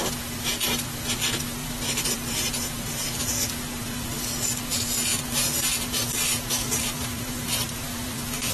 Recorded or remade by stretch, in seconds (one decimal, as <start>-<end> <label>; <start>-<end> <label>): 0.0-1.6 recorded; 1.6-3.7 remade; 3.7-5.1 recorded; 5.1-8.5 remade